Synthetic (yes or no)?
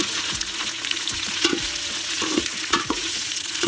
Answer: yes